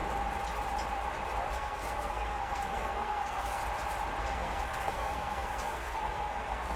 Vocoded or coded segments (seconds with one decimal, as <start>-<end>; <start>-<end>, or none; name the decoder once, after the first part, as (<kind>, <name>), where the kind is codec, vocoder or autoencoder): 1.5-3.6 (codec, SNAC); 4.2-6.8